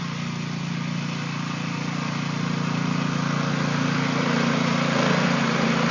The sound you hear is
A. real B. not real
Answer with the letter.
A